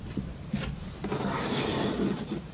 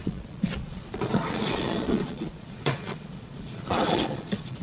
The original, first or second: first